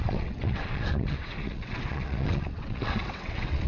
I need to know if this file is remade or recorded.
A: remade